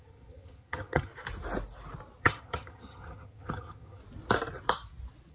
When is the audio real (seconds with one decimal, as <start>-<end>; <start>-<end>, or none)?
1.1-2.2; 4.0-5.3